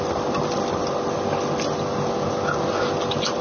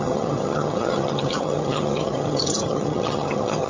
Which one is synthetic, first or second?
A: second